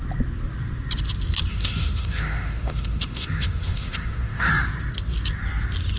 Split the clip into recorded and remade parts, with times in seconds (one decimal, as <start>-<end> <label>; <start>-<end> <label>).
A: 0.0-1.5 recorded; 1.5-4.5 remade; 4.5-6.0 recorded

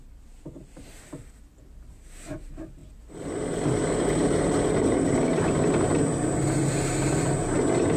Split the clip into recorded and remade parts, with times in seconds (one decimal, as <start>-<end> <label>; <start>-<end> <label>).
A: 0.0-8.0 recorded

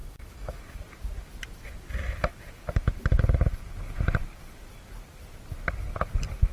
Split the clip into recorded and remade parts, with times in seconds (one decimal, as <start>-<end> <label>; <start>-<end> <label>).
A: 0.0-0.6 remade; 0.6-6.5 recorded

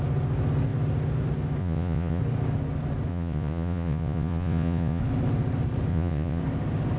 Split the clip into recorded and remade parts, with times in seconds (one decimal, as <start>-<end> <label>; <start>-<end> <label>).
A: 0.0-1.6 recorded; 1.6-2.2 remade; 2.2-3.1 recorded; 3.1-5.0 remade; 5.0-5.9 recorded; 5.9-6.4 remade; 6.4-7.0 recorded

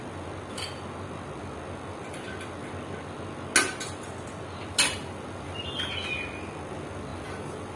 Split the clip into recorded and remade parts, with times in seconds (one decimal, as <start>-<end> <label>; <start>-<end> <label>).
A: 0.0-7.8 recorded

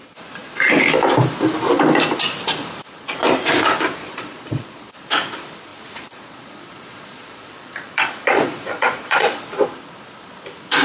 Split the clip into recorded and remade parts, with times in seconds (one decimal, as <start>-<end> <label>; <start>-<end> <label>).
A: 0.0-4.0 recorded; 4.0-4.9 remade; 4.9-5.7 recorded; 5.7-9.4 remade; 9.4-10.8 recorded

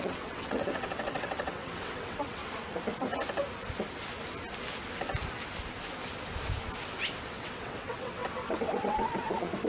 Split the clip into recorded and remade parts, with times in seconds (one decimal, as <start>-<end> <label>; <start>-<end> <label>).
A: 0.0-2.4 remade; 2.4-7.3 recorded; 7.3-9.7 remade

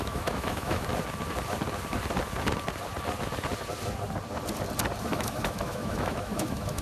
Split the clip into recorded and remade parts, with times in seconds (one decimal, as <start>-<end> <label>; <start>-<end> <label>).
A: 0.0-0.9 remade; 0.9-5.0 recorded; 5.0-6.8 remade